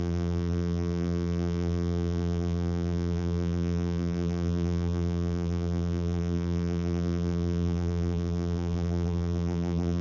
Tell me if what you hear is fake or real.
fake